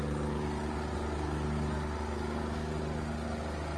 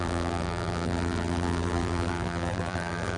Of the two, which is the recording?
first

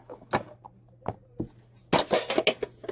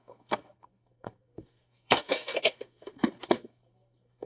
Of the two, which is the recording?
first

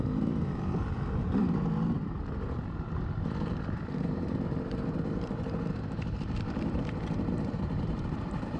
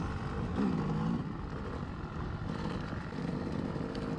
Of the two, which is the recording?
second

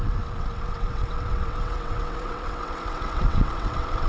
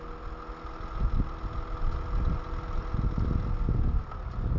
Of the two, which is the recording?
second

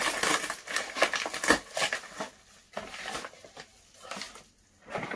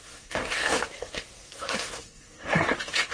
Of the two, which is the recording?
first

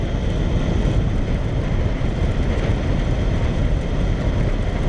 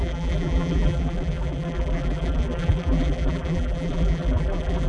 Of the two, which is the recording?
first